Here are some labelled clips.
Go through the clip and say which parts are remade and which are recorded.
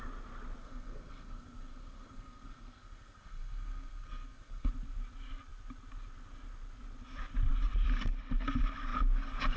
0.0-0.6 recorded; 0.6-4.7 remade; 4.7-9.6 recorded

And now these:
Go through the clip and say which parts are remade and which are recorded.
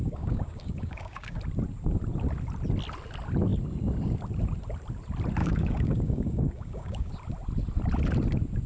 0.0-1.4 remade; 1.4-5.4 recorded; 5.4-7.1 remade; 7.1-8.7 recorded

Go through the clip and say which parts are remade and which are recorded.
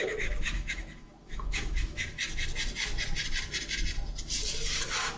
0.0-2.0 remade; 2.0-5.2 recorded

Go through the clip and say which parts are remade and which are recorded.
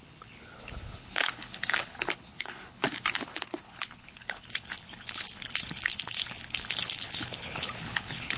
0.0-2.8 remade; 2.8-3.6 recorded; 3.6-8.4 remade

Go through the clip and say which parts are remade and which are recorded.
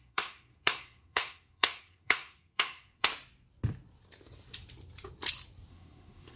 0.0-3.1 remade; 3.1-5.7 recorded; 5.7-6.4 remade